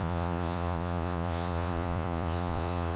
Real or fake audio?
fake